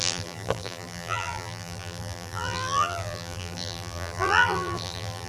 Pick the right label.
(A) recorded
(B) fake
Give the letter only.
B